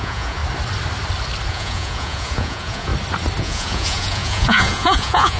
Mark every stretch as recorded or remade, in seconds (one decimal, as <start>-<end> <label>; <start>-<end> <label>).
0.0-0.4 remade; 0.4-1.5 recorded; 1.5-2.9 remade; 2.9-3.4 recorded; 3.4-5.4 remade